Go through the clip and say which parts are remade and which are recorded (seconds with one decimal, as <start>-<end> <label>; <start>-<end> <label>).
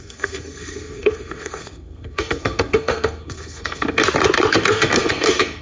0.0-4.0 remade; 4.0-4.5 recorded; 4.5-5.6 remade